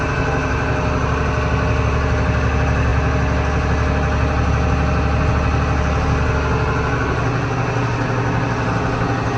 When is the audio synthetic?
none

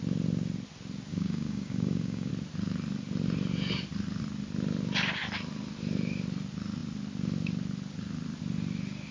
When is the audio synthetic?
1.1-2.3 (codec, DAC)

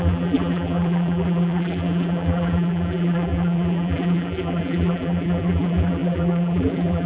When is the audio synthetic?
0.0-7.1 (vocoder, BigVGAN v2)

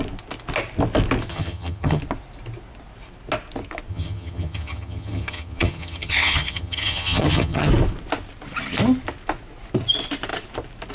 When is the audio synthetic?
1.3-2.0 (vocoder, HiFi-GAN); 3.9-7.7